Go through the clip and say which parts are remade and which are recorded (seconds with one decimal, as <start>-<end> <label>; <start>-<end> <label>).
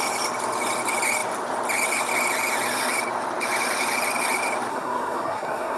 0.0-4.7 recorded; 4.7-5.8 remade